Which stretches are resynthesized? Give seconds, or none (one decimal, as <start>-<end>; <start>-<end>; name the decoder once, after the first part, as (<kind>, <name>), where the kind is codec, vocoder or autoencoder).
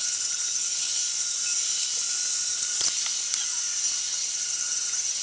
0.0-1.0 (vocoder, HiFi-GAN); 4.1-5.2